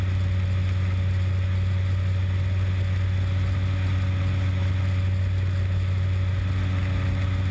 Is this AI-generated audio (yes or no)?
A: no